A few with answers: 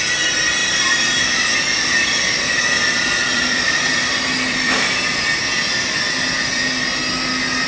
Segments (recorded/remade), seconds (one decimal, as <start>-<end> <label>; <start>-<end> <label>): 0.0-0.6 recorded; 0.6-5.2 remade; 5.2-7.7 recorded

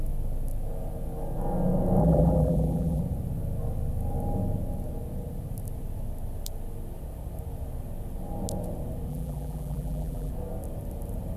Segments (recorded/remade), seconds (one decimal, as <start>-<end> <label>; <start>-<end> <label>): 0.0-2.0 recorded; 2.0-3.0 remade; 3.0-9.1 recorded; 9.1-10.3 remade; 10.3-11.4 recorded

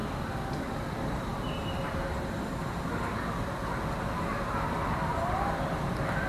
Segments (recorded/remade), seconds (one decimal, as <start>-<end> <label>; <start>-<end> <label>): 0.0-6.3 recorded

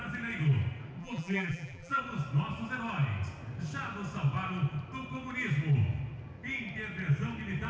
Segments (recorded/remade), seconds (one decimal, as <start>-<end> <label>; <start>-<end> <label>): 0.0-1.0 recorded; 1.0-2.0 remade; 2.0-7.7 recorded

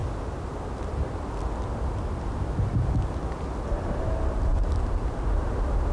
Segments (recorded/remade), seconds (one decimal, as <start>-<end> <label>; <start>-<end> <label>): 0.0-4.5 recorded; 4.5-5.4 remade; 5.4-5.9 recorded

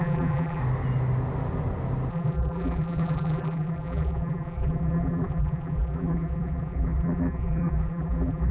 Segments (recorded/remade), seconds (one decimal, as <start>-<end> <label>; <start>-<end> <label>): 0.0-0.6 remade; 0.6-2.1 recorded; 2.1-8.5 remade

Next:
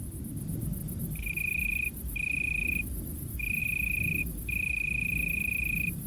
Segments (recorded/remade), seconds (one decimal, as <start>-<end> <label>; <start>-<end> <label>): 0.0-6.1 recorded